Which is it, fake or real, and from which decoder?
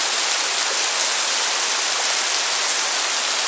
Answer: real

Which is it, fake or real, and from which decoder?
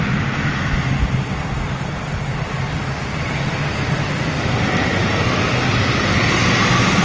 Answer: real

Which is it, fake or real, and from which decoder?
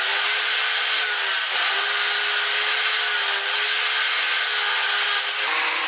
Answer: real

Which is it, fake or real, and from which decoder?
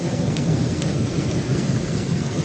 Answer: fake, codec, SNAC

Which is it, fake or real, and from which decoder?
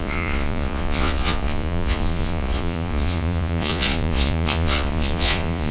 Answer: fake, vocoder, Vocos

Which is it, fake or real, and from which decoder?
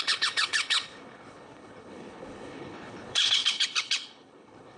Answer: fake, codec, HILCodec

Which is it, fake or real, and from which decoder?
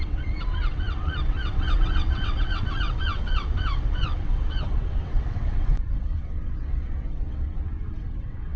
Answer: fake, vocoder, WaveNeXt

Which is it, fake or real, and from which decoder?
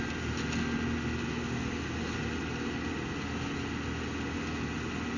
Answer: real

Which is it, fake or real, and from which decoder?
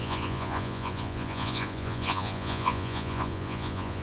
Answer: fake, vocoder, Vocos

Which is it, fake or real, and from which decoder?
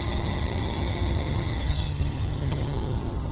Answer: fake, vocoder, HiFi-GAN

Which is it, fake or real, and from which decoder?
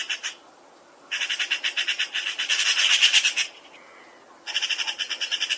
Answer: real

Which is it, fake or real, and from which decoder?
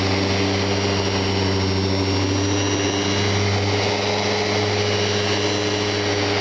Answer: real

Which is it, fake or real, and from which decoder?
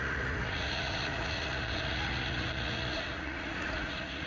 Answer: fake, vocoder, Vocos